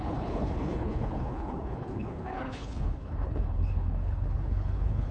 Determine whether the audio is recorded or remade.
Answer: remade